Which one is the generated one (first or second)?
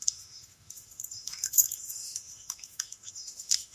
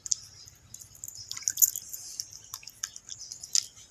first